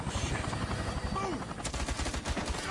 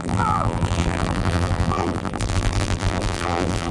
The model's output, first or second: second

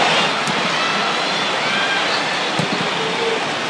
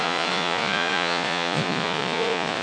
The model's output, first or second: second